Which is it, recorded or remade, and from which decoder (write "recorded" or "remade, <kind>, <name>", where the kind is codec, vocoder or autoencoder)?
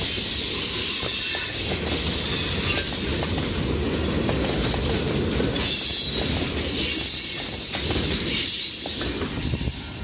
recorded